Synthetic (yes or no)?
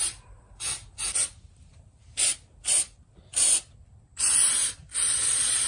no